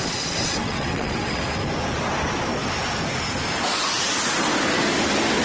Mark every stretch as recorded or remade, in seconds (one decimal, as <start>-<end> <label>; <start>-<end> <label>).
0.0-1.4 remade; 1.4-5.4 recorded